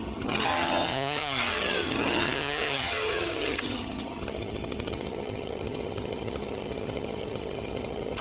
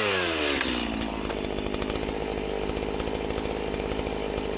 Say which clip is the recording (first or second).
second